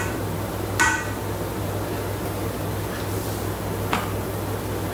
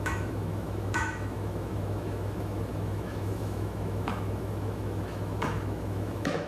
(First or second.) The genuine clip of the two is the first